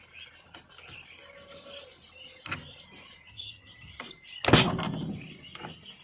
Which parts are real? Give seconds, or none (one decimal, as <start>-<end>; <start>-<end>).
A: 0.0-3.3; 4.0-6.0